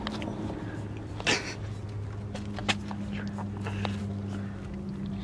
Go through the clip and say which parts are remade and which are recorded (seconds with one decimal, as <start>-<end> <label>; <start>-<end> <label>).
0.0-5.2 recorded